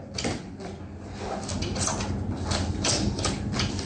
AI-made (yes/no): no